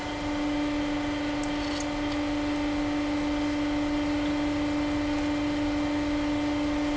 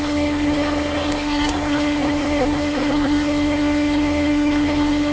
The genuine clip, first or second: first